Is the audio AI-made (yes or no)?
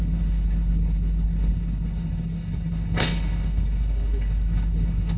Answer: yes